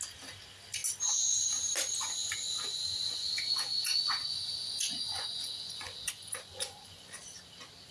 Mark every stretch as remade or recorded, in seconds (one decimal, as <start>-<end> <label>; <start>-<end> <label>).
0.0-2.7 recorded; 2.7-7.2 remade; 7.2-7.9 recorded